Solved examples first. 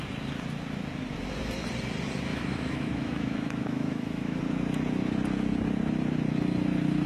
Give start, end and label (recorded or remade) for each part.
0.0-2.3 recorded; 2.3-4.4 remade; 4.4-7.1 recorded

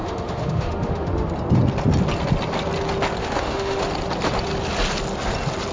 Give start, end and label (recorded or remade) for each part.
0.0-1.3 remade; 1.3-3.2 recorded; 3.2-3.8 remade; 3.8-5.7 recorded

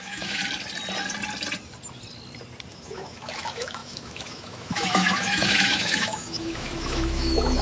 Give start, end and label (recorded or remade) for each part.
0.0-0.4 remade; 0.4-2.7 recorded; 2.7-7.6 remade